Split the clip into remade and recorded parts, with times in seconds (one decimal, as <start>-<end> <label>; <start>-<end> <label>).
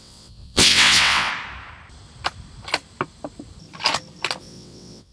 0.0-1.3 remade; 1.3-4.4 recorded; 4.4-5.1 remade